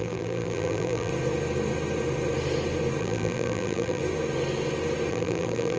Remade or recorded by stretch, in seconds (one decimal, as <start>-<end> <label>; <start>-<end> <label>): 0.0-1.1 remade; 1.1-3.0 recorded; 3.0-4.0 remade; 4.0-5.1 recorded; 5.1-5.8 remade